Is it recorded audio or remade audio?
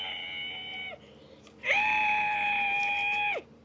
recorded